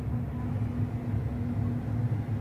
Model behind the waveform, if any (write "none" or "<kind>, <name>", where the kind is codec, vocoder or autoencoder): none